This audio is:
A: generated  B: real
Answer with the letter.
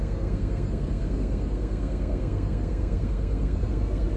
A